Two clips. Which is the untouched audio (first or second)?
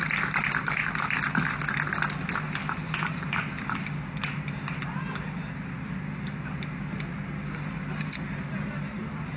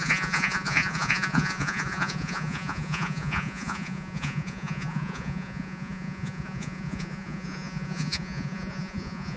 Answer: first